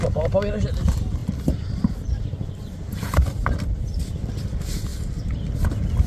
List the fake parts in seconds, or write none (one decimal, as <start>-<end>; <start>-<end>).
1.2-4.3; 4.9-5.4